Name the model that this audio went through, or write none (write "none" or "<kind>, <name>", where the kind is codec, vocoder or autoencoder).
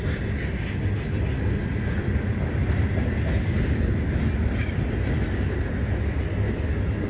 none